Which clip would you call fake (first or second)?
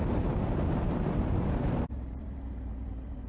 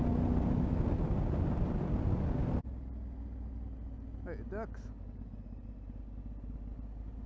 first